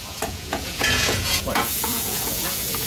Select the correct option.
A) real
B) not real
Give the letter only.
B